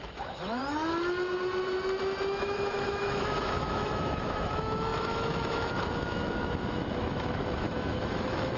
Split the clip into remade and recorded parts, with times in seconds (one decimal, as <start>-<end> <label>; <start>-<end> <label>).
0.0-0.6 remade; 0.6-2.4 recorded; 2.4-8.6 remade